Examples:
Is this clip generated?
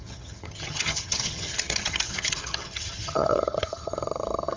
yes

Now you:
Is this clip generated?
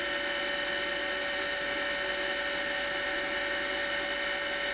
no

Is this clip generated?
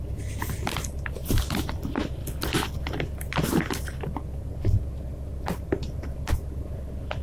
no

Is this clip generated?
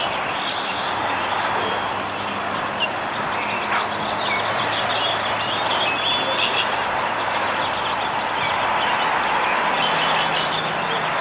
no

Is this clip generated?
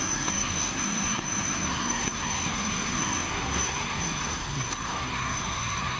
yes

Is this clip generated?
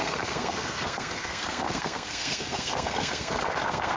yes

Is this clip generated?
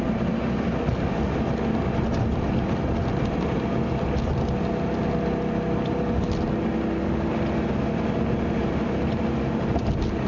no